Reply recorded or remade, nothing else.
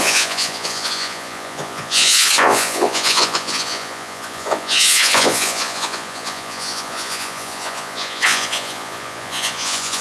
remade